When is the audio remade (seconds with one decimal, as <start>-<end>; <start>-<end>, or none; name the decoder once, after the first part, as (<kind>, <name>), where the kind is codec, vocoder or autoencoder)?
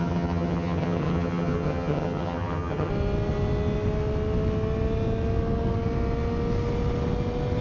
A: 0.0-2.9 (vocoder, HiFi-GAN)